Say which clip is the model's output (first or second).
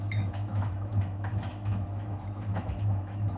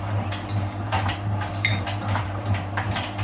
first